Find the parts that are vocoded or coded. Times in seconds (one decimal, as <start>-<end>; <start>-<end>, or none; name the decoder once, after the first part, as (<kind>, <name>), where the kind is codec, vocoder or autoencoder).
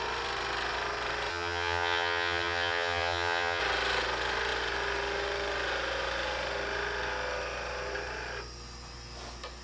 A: 1.3-3.6 (vocoder, HiFi-GAN)